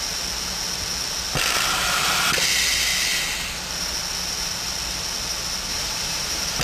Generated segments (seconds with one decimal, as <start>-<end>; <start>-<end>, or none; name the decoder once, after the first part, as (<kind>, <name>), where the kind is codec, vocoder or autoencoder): 5.7-6.6 (vocoder, BigVGAN v2)